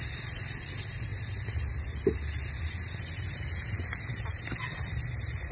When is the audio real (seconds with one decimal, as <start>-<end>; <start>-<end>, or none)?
none